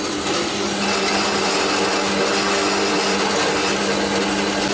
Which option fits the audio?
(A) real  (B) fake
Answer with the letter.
A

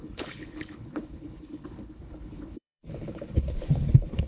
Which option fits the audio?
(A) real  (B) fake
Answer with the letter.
B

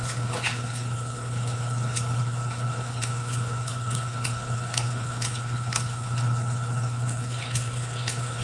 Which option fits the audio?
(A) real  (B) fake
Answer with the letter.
B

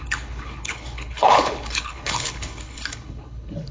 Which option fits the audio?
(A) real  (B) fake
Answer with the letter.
B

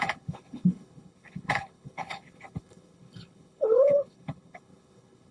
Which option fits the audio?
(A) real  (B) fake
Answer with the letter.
B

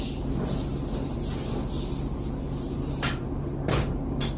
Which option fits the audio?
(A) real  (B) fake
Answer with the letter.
A